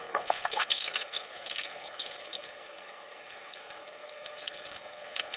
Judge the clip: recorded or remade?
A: remade